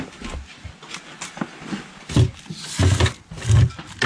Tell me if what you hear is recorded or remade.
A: recorded